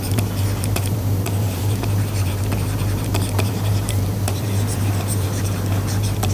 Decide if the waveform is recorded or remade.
remade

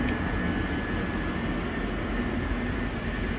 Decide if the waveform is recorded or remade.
recorded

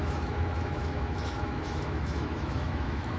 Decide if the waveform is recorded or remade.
remade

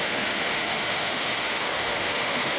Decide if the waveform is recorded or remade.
remade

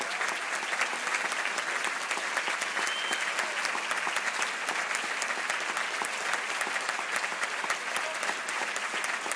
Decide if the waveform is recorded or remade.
recorded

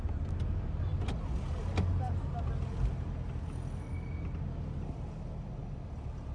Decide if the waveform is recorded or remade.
recorded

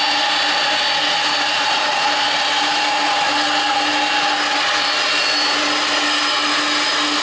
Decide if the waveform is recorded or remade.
recorded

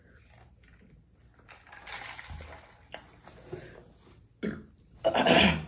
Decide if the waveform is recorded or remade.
recorded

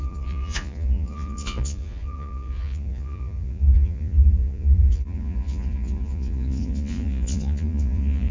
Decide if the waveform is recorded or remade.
remade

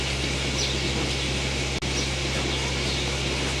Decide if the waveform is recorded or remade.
recorded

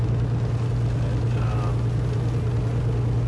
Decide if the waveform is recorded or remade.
recorded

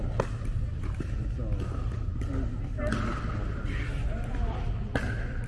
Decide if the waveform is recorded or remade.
recorded